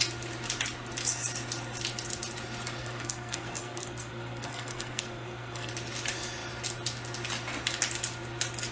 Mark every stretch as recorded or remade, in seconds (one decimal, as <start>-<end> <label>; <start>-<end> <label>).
0.0-2.8 recorded; 2.8-5.7 remade; 5.7-8.7 recorded